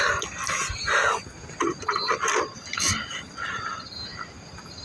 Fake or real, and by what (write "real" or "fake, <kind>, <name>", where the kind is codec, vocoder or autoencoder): real